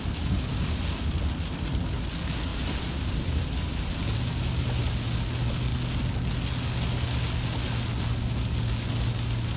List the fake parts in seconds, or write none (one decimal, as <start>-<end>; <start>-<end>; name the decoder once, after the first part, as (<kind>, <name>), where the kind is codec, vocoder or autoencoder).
2.5-3.9 (vocoder, BigVGAN v2)